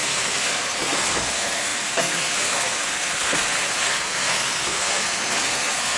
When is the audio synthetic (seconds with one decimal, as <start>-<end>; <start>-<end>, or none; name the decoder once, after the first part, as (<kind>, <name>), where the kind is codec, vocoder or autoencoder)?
0.0-6.0 (codec, SNAC)

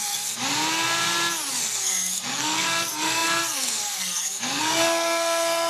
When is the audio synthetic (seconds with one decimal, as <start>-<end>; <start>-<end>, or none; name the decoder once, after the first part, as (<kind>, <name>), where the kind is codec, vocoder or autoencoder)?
0.0-0.4 (codec, SNAC); 1.6-5.7

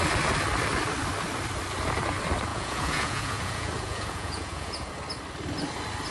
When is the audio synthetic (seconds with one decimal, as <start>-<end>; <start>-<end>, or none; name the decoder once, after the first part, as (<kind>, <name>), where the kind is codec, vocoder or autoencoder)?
2.5-4.9 (vocoder, Vocos)